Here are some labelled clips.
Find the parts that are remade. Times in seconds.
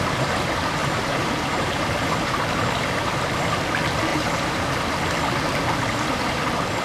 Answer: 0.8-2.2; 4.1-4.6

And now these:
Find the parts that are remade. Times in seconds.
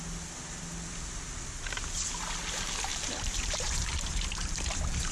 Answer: 2.9-5.1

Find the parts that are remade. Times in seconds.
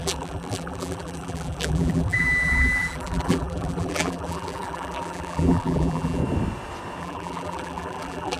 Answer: 0.0-6.2; 7.0-8.4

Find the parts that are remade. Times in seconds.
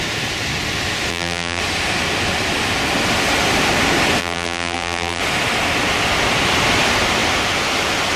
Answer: 1.1-1.6; 4.2-5.2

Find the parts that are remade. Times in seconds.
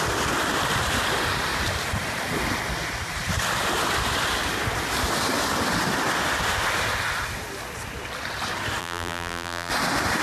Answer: 8.8-9.7